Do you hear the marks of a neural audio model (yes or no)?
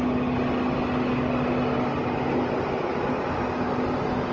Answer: no